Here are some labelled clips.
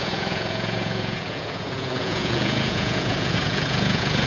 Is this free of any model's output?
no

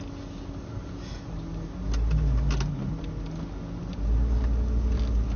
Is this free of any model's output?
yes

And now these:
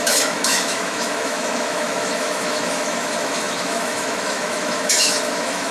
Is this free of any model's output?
no